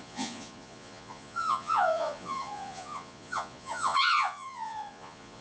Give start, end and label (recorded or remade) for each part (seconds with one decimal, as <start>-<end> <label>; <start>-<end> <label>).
0.0-5.4 remade